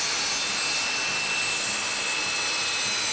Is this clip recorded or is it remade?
recorded